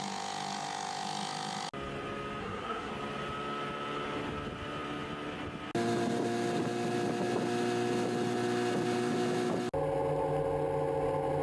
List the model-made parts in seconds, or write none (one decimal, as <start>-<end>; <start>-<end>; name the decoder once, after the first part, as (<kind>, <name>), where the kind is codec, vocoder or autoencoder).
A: 2.4-2.9 (codec, SNAC)